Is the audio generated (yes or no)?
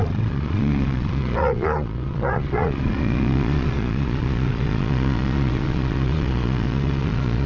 yes